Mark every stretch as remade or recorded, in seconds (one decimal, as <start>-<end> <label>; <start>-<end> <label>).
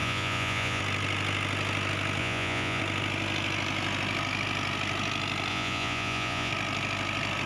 0.0-0.8 remade; 0.8-2.2 recorded; 2.2-2.8 remade; 2.8-5.5 recorded; 5.5-6.5 remade; 6.5-7.5 recorded